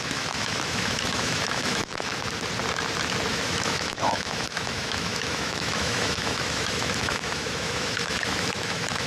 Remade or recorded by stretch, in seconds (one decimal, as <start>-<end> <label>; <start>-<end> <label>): 0.0-2.1 remade; 2.1-3.3 recorded; 3.3-9.1 remade